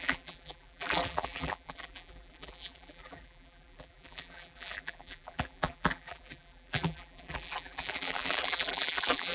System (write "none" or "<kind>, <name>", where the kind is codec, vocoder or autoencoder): vocoder, BigVGAN v2